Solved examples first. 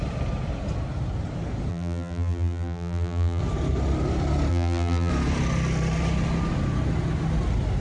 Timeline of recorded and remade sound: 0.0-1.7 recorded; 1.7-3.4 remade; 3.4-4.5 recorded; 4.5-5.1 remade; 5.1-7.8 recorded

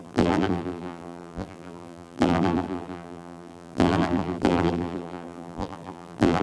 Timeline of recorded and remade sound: 0.0-6.4 remade

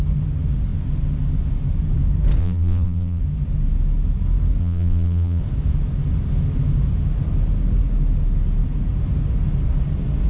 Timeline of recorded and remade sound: 0.0-2.4 recorded; 2.4-3.2 remade; 3.2-4.6 recorded; 4.6-5.4 remade; 5.4-10.3 recorded

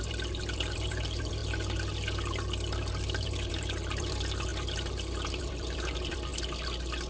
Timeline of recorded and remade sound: 0.0-1.4 remade; 1.4-3.2 recorded; 3.2-4.5 remade; 4.5-5.4 recorded; 5.4-6.3 remade; 6.3-7.1 recorded

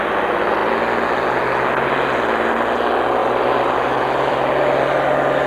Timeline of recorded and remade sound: 0.0-3.2 recorded; 3.2-4.5 remade; 4.5-5.5 recorded

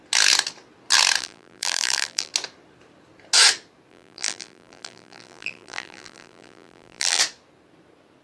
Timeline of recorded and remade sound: 0.0-1.2 recorded; 1.2-2.3 remade; 2.3-3.9 recorded; 3.9-7.2 remade; 7.2-8.2 recorded

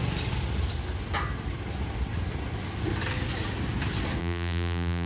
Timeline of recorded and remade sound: 0.0-4.2 recorded; 4.2-5.1 remade

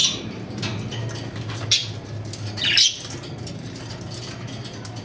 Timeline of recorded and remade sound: 0.0-0.6 remade; 0.6-5.0 recorded